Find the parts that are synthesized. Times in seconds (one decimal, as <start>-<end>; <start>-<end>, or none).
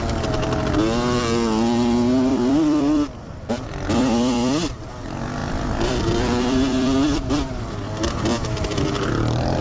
2.3-3.5; 4.0-4.9; 5.4-7.3; 8.3-9.1